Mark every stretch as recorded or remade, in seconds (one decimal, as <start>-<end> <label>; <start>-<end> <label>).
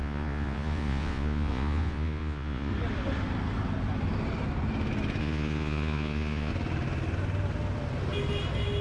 0.0-2.7 remade; 2.7-5.2 recorded; 5.2-6.5 remade; 6.5-8.8 recorded